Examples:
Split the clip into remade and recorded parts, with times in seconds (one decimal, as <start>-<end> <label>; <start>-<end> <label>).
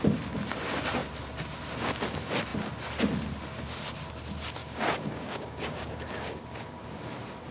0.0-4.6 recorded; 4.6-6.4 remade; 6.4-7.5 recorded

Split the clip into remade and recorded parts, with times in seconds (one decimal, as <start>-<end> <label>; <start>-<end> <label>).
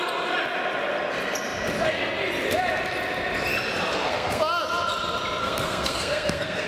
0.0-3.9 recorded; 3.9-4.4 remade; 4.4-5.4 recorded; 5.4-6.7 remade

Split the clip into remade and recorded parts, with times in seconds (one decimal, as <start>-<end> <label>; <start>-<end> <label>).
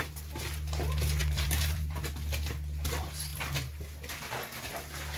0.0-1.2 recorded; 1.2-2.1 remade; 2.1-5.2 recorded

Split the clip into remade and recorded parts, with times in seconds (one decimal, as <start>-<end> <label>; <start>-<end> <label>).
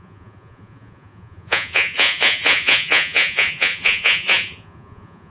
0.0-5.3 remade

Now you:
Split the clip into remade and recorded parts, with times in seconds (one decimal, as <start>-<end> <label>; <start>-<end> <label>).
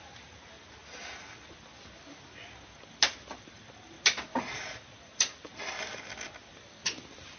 0.0-0.8 remade; 0.8-4.4 recorded; 4.4-5.5 remade; 5.5-6.5 recorded; 6.5-7.4 remade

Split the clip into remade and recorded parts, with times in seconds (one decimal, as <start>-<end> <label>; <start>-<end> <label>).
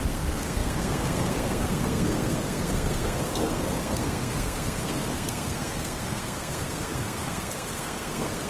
0.0-8.5 remade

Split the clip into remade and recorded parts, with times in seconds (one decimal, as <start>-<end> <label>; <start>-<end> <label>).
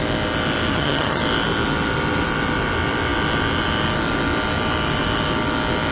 0.0-0.7 recorded; 0.7-1.2 remade; 1.2-5.9 recorded